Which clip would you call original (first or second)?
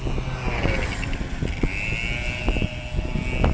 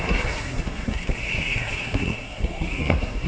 first